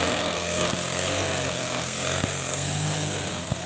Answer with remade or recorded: remade